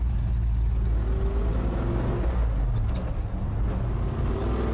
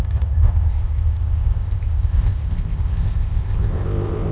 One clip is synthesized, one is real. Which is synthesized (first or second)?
second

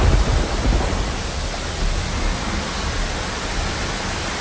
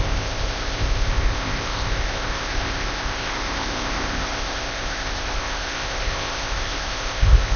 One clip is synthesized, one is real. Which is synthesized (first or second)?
second